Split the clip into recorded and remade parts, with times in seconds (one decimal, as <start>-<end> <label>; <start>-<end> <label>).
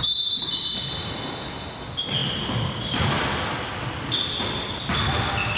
0.0-5.6 recorded